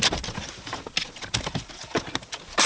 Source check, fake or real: real